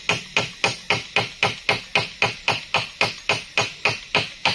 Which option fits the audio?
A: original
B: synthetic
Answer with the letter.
A